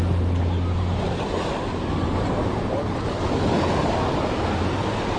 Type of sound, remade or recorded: recorded